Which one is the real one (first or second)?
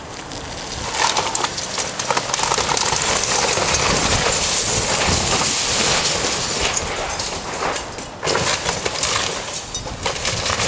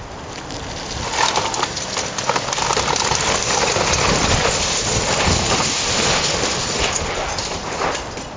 first